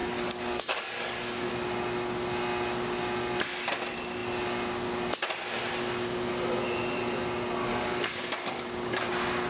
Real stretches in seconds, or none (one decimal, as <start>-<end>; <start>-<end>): 1.5-7.6; 9.1-9.5